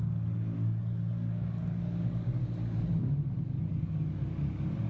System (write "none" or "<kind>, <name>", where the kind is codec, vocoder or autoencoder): codec, DAC